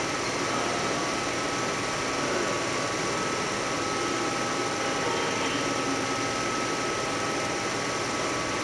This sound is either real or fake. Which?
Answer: real